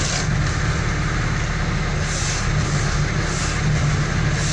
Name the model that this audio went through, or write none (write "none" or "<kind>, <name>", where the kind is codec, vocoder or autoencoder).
none